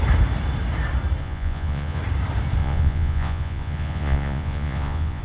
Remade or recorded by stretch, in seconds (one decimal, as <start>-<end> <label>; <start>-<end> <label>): 0.0-1.2 recorded; 1.2-2.0 remade; 2.0-2.6 recorded; 2.6-5.2 remade